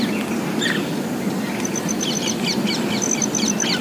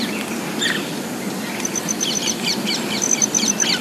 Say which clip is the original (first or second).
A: first